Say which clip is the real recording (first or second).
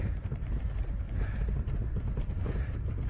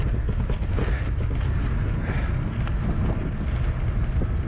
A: second